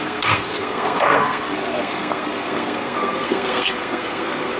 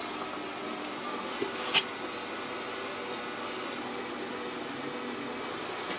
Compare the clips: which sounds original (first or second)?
second